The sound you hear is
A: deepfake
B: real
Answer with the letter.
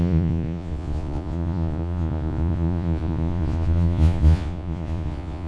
A